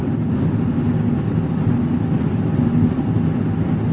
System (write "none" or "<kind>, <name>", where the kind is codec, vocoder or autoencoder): none